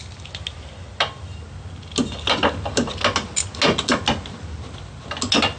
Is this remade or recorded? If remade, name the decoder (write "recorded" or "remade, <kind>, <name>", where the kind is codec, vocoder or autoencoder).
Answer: recorded